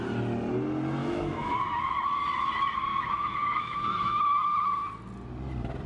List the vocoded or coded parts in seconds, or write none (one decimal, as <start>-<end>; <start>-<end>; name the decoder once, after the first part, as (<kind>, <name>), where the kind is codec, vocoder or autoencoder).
1.0-1.6 (autoencoder, DAC-VAE); 2.9-4.2